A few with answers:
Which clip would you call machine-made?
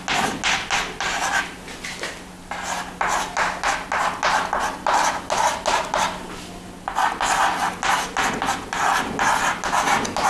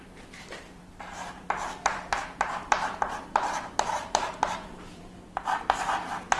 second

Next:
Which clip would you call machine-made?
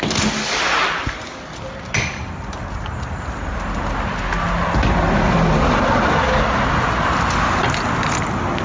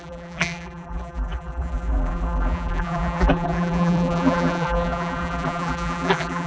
second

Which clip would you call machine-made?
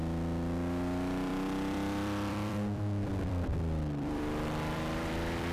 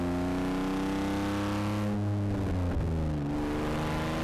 first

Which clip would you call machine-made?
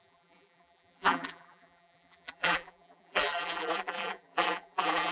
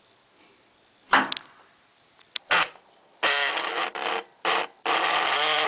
first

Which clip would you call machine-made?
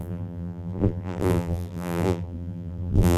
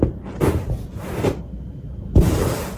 first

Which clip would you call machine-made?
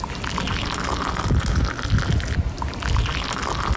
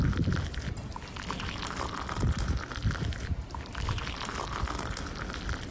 second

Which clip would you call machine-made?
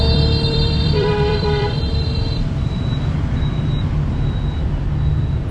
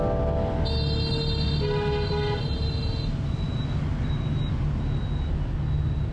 first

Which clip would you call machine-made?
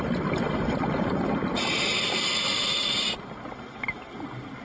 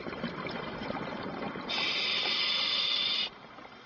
second